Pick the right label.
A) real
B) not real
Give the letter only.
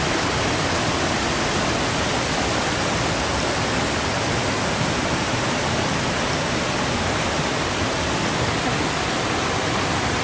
A